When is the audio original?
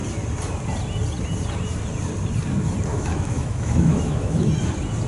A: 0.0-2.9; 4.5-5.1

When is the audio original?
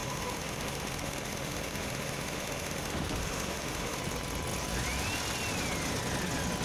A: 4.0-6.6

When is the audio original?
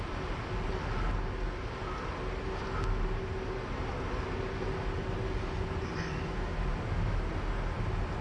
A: 0.0-8.2